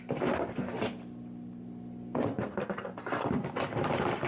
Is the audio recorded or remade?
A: recorded